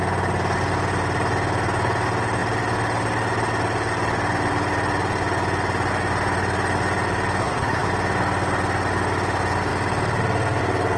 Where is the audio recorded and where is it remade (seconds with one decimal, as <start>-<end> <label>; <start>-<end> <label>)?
0.0-7.4 recorded; 7.4-7.9 remade; 7.9-11.0 recorded